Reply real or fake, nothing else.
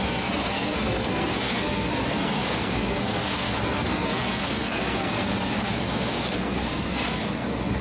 fake